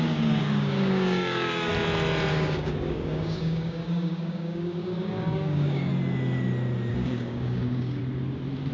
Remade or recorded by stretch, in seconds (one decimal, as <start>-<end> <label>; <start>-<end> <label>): 0.0-1.7 remade; 1.7-2.3 recorded; 2.3-5.9 remade; 5.9-6.9 recorded; 6.9-8.0 remade; 8.0-8.7 recorded